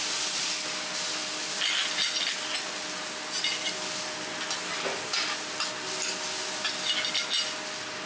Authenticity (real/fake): real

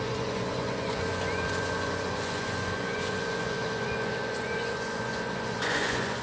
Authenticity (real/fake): fake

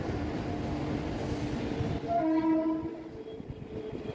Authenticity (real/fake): real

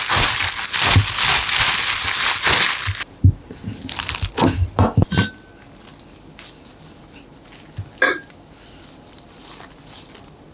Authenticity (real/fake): real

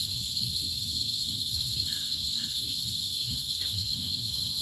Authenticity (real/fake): fake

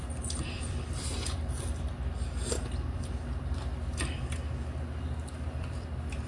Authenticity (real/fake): fake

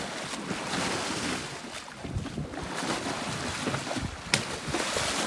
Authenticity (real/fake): real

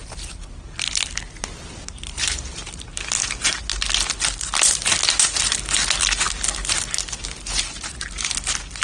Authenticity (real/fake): real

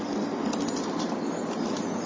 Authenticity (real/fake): real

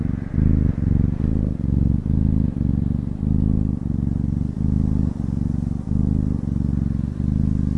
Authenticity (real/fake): real